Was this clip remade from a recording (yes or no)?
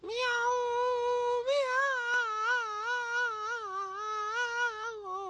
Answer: no